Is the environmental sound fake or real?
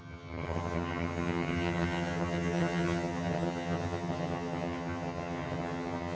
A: fake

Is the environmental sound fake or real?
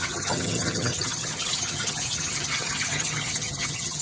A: fake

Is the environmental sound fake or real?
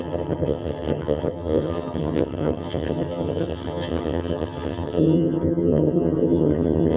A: fake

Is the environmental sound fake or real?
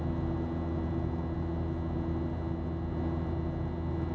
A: real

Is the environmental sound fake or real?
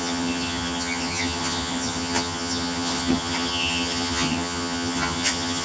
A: fake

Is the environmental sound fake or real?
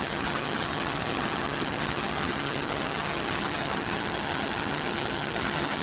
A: fake